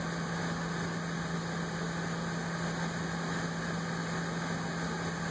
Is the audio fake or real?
real